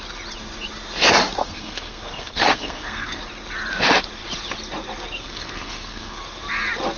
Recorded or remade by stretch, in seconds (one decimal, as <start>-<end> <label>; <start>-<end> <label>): 0.0-1.4 recorded; 1.4-3.2 remade; 3.2-5.2 recorded; 5.2-6.2 remade; 6.2-7.0 recorded